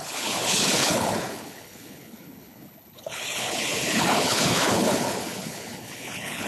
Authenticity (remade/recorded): remade